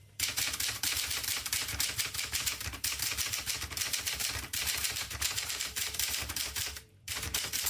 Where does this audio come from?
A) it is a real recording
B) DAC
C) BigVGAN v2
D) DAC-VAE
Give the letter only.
C